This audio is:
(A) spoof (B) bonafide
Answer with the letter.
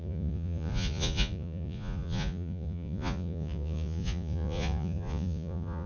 A